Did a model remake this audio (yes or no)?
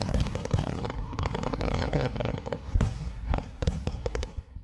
yes